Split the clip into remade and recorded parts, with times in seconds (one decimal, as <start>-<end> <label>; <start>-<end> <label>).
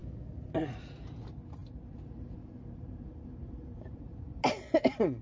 0.0-1.6 recorded; 1.6-4.4 remade; 4.4-5.2 recorded